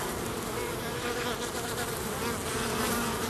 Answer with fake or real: real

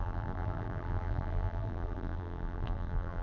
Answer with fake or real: fake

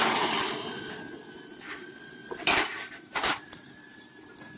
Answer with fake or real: fake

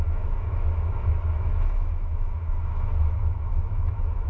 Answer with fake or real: fake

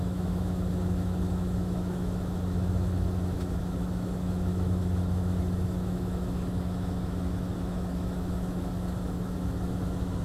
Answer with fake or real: fake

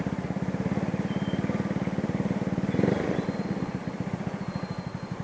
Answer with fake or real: fake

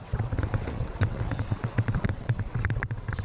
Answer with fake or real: fake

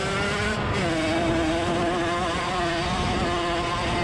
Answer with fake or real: real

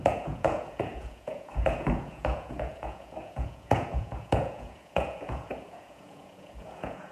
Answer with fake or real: fake